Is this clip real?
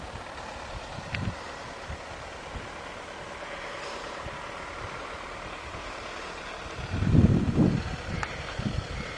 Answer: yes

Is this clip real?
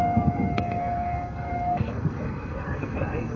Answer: no